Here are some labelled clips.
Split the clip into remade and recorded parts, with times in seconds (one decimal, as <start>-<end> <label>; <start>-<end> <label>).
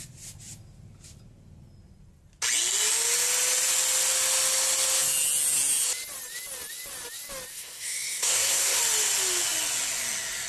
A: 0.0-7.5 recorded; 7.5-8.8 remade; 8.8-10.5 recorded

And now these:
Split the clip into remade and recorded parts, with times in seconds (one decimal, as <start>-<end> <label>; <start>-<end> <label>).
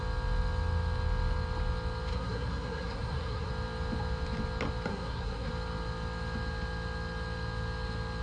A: 0.0-2.1 recorded; 2.1-3.5 remade; 3.5-4.9 recorded; 4.9-5.5 remade; 5.5-8.2 recorded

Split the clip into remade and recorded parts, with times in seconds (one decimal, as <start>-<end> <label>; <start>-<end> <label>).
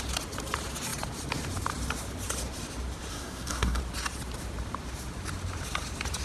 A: 0.0-3.1 recorded; 3.1-3.8 remade; 3.8-6.2 recorded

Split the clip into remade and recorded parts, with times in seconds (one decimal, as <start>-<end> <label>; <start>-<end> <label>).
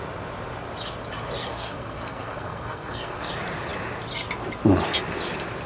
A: 0.0-1.4 recorded; 1.4-3.3 remade; 3.3-5.7 recorded